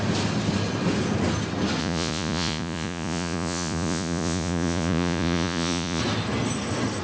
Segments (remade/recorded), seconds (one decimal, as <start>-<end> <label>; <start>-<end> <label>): 0.0-1.8 recorded; 1.8-6.0 remade; 6.0-7.0 recorded